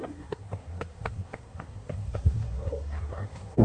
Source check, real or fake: fake